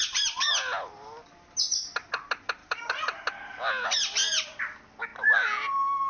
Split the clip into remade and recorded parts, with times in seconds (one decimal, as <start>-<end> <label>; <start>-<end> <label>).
0.0-2.6 recorded; 2.6-3.3 remade; 3.3-6.1 recorded